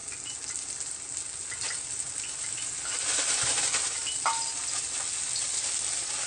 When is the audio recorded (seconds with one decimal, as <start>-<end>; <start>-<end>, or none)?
0.0-6.3